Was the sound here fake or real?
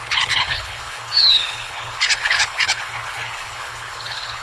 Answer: fake